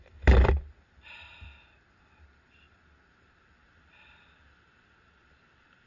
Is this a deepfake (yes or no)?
no